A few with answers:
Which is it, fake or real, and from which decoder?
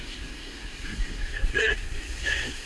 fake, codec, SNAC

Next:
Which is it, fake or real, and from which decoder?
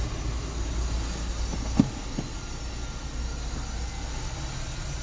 real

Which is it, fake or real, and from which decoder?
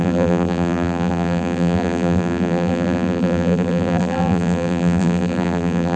fake, vocoder, BigVGAN v2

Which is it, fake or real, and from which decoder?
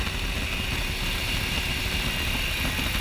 real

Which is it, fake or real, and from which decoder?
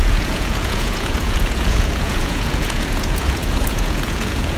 fake, vocoder, Vocos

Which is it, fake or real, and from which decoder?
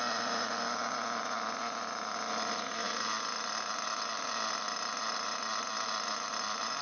real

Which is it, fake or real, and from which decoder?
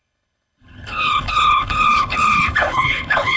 fake, codec, HILCodec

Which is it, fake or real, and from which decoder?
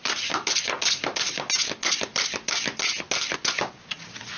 real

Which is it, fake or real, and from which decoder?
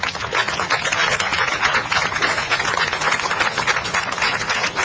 fake, vocoder, Vocos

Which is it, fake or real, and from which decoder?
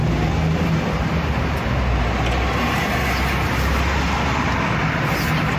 real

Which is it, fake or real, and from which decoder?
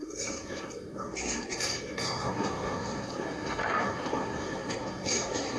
fake, codec, SNAC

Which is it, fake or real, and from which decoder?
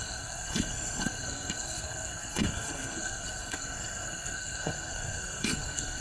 fake, codec, SNAC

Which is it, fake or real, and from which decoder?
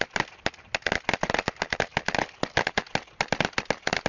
real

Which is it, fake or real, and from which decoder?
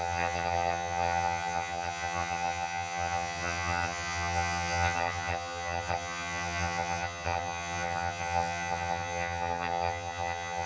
fake, vocoder, HiFi-GAN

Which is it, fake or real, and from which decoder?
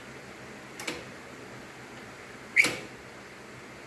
real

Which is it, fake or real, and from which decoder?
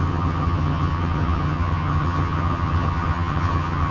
fake, vocoder, HiFi-GAN